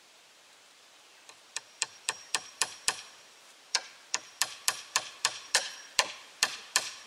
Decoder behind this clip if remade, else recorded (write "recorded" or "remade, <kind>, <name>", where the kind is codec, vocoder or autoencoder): remade, vocoder, BigVGAN v2